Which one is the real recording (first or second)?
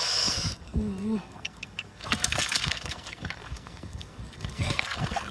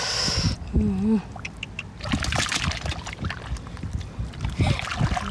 second